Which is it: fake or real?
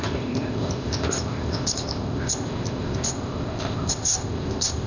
fake